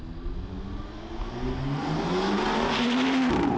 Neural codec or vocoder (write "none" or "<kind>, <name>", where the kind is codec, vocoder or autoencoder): none